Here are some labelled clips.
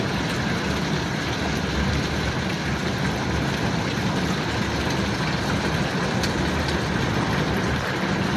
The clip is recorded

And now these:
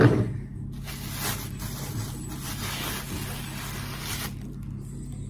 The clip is recorded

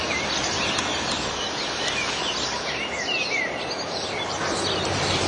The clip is recorded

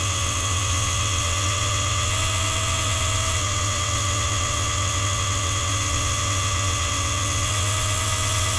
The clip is remade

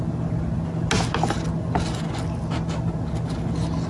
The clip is recorded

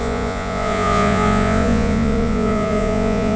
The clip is remade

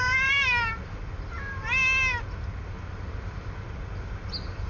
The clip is recorded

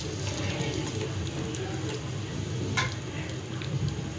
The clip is recorded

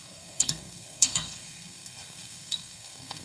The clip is remade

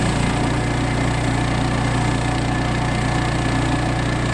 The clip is recorded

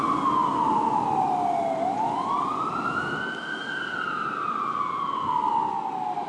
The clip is recorded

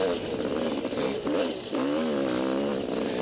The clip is recorded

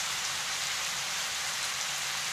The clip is remade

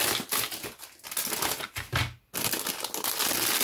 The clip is recorded